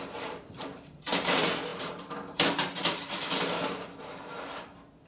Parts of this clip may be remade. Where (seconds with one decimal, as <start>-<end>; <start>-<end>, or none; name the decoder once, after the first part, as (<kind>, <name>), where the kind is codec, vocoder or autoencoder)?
0.0-5.1 (vocoder, BigVGAN v2)